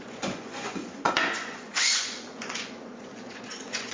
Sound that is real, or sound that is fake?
fake